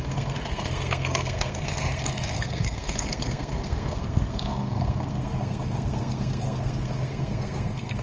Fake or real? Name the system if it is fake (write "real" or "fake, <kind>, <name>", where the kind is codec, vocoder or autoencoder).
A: fake, codec, SNAC